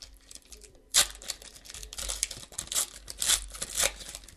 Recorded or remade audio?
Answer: recorded